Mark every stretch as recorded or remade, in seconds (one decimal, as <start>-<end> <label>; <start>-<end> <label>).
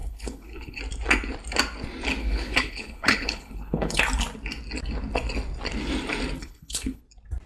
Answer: 0.0-0.8 remade; 0.8-2.2 recorded; 2.2-4.0 remade; 4.0-6.4 recorded; 6.4-7.0 remade; 7.0-7.5 recorded